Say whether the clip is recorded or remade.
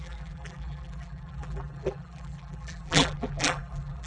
remade